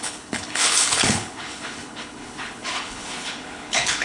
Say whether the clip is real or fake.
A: fake